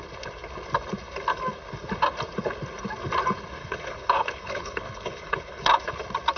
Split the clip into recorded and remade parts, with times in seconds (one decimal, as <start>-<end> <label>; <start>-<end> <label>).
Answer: 0.0-3.6 recorded; 3.6-5.8 remade; 5.8-6.4 recorded